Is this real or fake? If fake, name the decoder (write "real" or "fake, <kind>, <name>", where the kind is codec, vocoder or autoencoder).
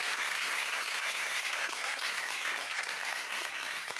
fake, codec, SNAC